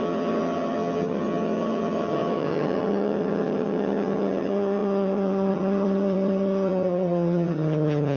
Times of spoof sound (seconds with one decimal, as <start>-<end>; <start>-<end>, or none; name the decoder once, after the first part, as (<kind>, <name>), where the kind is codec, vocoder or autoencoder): 0.0-8.2 (vocoder, HiFi-GAN)